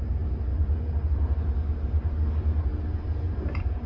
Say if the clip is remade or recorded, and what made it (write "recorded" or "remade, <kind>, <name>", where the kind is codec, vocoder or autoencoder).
recorded